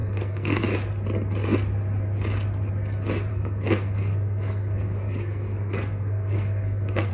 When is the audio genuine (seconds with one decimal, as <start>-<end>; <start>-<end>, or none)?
0.6-3.3

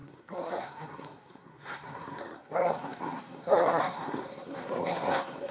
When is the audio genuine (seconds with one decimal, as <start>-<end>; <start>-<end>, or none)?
none

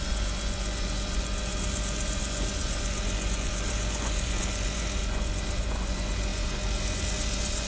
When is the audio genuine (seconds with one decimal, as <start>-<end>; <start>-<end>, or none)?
none

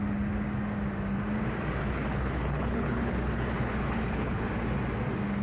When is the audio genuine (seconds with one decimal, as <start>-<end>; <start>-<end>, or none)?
0.0-1.8; 4.5-5.4

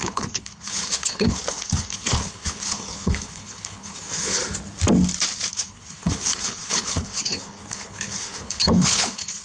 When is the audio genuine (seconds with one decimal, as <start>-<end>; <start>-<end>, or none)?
4.4-5.5

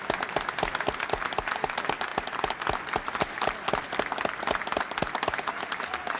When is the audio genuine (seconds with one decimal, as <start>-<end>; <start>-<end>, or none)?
0.0-6.2

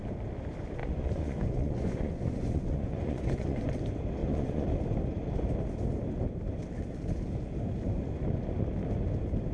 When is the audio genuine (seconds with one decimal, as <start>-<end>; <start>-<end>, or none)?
0.0-0.8; 3.7-4.2; 4.7-9.5